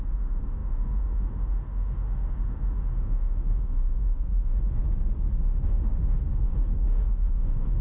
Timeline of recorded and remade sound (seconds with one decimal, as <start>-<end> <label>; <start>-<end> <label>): 0.0-4.8 remade; 4.8-5.4 recorded; 5.4-7.8 remade